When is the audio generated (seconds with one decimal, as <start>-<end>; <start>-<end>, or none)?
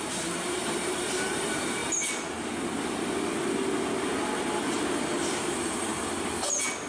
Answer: 0.0-1.8; 4.9-5.9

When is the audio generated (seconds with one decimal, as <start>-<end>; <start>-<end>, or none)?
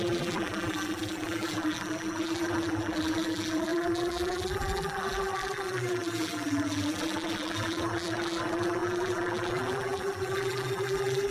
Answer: 0.0-11.3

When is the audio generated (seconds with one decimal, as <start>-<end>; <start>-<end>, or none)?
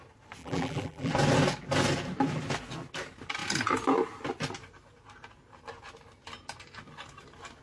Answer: 0.4-1.1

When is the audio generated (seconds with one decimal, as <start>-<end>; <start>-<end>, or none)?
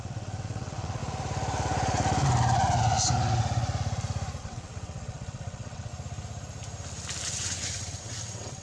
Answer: 0.0-1.0; 4.4-5.9; 7.3-8.6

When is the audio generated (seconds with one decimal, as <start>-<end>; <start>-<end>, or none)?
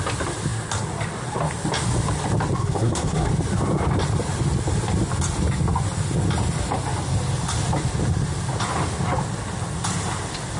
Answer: 2.6-3.3